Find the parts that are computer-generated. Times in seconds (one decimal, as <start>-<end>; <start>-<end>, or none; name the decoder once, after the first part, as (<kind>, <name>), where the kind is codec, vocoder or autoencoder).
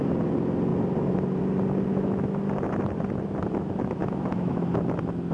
1.9-2.4 (autoencoder, DAC-VAE); 4.0-4.7